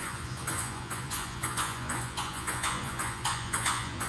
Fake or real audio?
fake